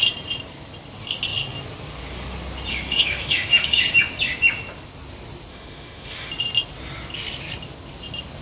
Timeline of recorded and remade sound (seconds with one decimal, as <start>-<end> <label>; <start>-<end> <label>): 0.0-2.7 recorded; 2.7-3.8 remade; 3.8-5.5 recorded; 5.5-6.3 remade; 6.3-8.4 recorded